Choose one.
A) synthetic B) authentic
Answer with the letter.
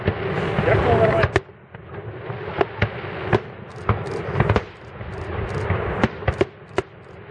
B